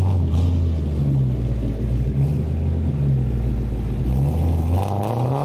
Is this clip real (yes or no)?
yes